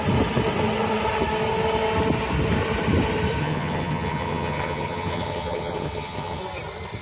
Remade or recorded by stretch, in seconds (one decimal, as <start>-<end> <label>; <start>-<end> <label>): 0.0-3.4 recorded; 3.4-6.4 remade; 6.4-7.0 recorded